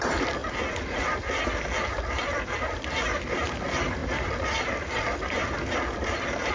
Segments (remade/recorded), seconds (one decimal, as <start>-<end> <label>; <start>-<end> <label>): 0.0-6.5 recorded